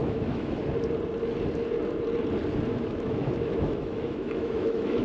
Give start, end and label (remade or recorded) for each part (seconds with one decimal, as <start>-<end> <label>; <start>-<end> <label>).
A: 0.0-0.6 remade; 0.6-2.7 recorded; 2.7-5.0 remade